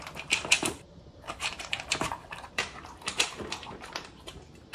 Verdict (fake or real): fake